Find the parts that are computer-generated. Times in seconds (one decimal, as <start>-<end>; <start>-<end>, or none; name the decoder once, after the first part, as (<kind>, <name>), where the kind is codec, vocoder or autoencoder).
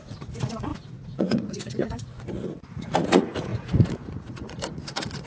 0.0-5.3 (vocoder, Vocos)